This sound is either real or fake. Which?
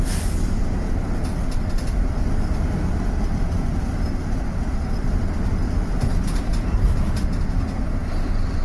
real